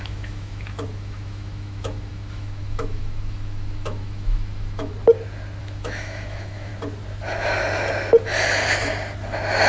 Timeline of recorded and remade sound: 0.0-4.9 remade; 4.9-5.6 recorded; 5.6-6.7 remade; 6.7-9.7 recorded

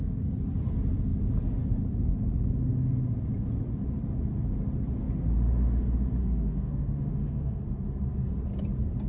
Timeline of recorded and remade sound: 0.0-6.2 recorded; 6.2-7.6 remade; 7.6-9.1 recorded

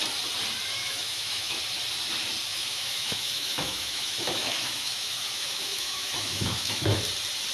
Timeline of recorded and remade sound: 0.0-0.8 recorded; 0.8-1.6 remade; 1.6-2.5 recorded; 2.5-7.0 remade; 7.0-7.5 recorded

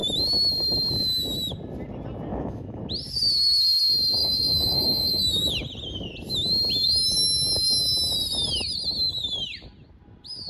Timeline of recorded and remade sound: 0.0-2.3 recorded; 2.3-2.8 remade; 2.8-4.2 recorded; 4.2-5.5 remade; 5.5-10.5 recorded